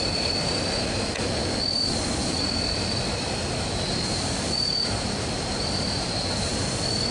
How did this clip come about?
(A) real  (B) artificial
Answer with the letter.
A